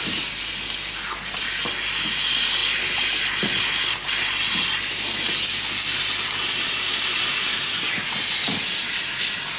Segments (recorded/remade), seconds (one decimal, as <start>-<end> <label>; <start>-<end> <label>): 0.0-9.6 recorded